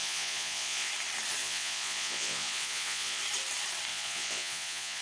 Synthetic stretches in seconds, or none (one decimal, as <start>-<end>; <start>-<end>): 0.0-0.9; 1.4-3.2; 3.9-5.0